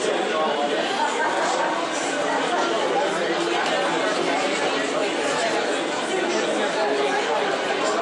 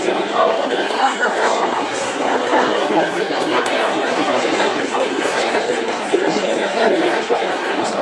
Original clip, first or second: first